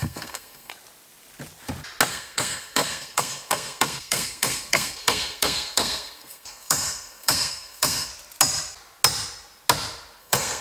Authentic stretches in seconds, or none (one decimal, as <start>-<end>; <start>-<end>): 0.7-2.1; 8.1-10.2